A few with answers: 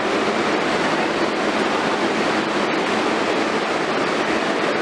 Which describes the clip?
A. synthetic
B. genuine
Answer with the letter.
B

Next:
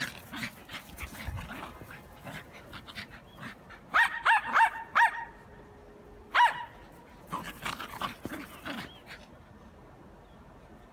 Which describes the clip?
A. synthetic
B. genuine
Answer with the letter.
B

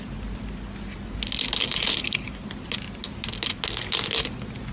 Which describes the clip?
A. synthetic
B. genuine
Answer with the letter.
B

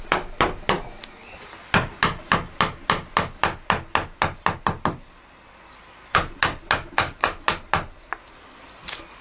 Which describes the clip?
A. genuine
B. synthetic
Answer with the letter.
A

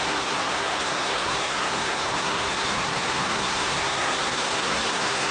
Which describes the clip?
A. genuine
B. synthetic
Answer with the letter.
B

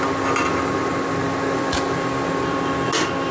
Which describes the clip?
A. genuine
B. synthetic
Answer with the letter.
A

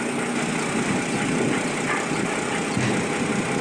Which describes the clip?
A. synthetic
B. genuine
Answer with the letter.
B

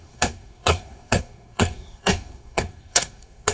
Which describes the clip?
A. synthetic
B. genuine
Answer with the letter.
A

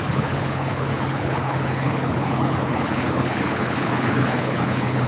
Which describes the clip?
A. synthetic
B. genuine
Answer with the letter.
A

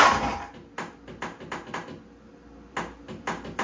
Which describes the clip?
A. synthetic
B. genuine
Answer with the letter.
B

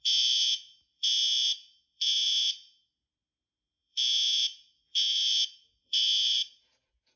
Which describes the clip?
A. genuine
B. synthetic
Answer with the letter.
B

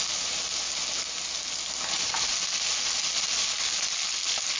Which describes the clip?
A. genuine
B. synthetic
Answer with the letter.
A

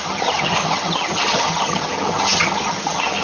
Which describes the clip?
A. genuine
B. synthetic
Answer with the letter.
B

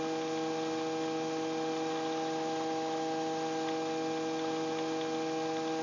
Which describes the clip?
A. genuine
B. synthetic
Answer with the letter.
A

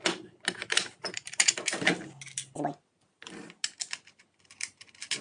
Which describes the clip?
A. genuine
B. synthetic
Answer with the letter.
A